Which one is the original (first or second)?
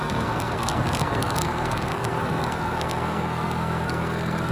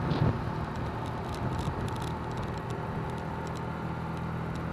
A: second